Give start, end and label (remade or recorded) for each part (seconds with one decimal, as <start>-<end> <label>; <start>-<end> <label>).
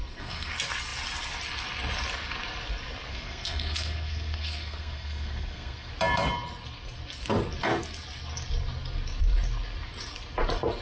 0.0-0.5 remade; 0.5-3.1 recorded; 3.1-5.9 remade; 5.9-10.8 recorded